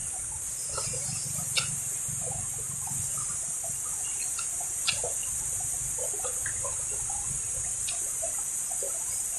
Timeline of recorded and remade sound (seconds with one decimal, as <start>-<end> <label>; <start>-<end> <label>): 0.0-9.4 recorded